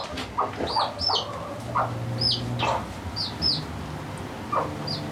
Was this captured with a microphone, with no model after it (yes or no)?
yes